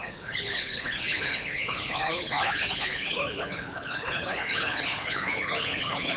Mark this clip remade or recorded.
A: remade